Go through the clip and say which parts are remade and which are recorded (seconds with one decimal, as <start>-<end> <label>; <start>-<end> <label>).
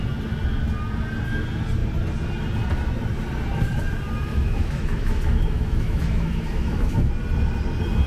0.0-4.3 recorded; 4.3-7.1 remade; 7.1-8.1 recorded